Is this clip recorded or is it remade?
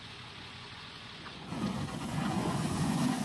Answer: remade